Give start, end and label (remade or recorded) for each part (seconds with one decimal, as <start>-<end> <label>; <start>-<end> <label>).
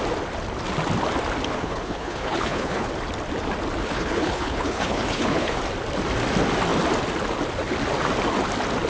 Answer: 0.0-1.5 recorded; 1.5-2.9 remade; 2.9-3.8 recorded; 3.8-5.6 remade; 5.6-8.9 recorded